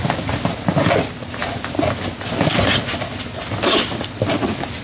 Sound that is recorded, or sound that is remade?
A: recorded